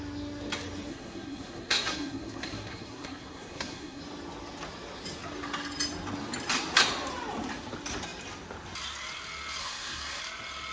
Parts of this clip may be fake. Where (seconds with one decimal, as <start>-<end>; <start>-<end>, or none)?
0.9-4.0; 9.6-10.2